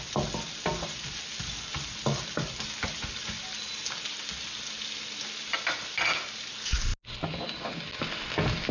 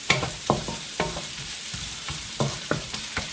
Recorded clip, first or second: first